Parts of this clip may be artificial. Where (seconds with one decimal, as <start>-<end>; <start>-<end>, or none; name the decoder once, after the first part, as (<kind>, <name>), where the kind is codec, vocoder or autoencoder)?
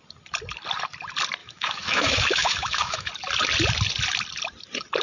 1.4-3.1 (autoencoder, DAC-VAE)